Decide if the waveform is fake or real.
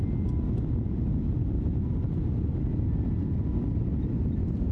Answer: real